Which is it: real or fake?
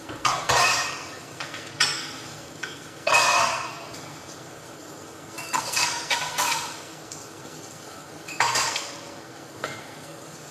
fake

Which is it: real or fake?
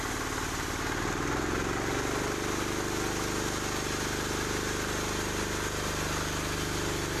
real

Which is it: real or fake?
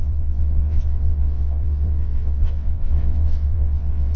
fake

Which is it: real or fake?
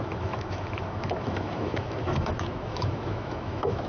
fake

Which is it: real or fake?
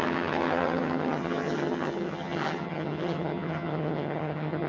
fake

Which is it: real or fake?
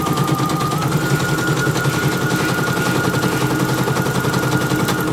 real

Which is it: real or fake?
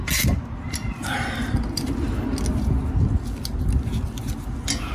real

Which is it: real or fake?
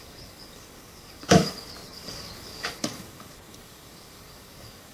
fake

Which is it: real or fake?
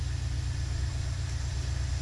real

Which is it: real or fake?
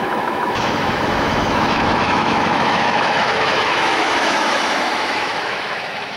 fake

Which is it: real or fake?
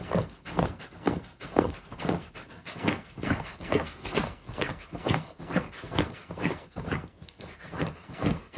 fake